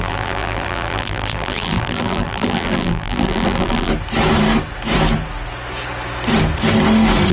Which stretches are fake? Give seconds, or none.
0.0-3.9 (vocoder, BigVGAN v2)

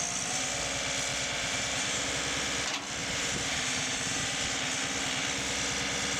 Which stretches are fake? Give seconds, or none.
1.1-2.1 (vocoder, BigVGAN v2); 3.0-4.4